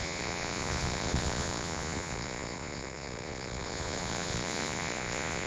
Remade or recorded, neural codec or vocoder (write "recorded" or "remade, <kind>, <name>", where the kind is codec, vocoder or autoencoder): remade, vocoder, Vocos